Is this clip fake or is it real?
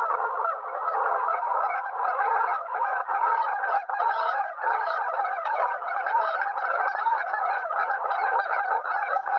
fake